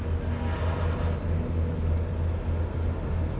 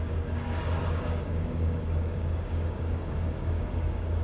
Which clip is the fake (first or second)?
second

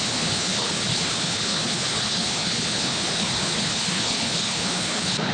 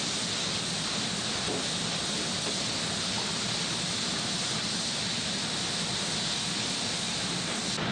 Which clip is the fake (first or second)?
first